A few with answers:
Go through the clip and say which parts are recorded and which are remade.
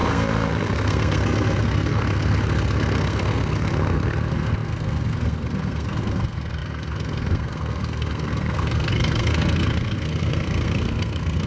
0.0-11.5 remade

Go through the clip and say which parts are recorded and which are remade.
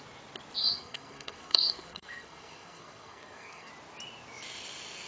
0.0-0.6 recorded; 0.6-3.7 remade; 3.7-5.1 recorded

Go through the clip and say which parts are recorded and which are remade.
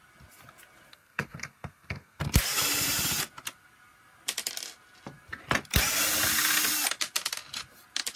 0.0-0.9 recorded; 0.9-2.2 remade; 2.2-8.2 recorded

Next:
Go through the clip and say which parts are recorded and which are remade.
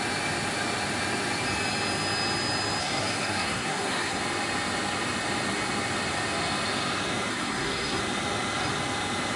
0.0-2.8 recorded; 2.8-4.2 remade; 4.2-7.3 recorded; 7.3-8.0 remade; 8.0-9.4 recorded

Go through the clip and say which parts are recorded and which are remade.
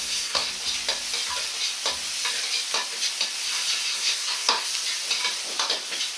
0.0-0.5 remade; 0.5-3.9 recorded; 3.9-4.7 remade; 4.7-6.2 recorded